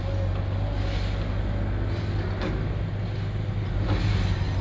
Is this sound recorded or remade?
recorded